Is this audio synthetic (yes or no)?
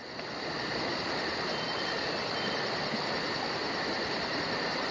no